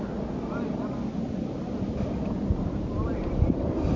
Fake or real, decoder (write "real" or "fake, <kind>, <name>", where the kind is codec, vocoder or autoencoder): real